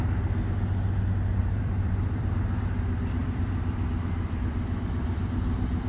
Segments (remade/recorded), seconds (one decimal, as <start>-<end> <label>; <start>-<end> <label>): 0.0-1.4 recorded; 1.4-2.3 remade; 2.3-3.2 recorded; 3.2-5.2 remade; 5.2-5.9 recorded